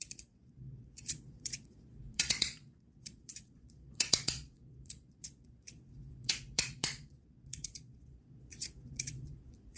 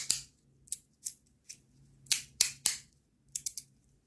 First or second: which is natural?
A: second